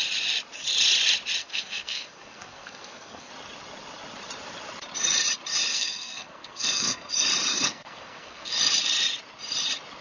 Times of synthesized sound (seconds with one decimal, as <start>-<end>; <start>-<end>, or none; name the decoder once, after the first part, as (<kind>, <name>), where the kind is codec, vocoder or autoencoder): 1.4-3.3 (codec, SNAC); 5.7-7.1; 7.5-8.5